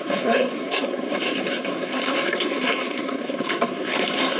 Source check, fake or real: fake